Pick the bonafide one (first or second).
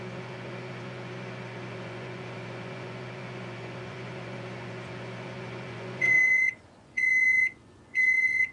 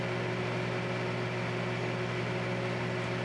second